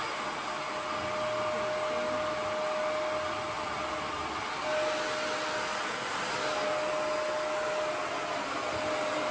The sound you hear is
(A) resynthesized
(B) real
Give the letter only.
B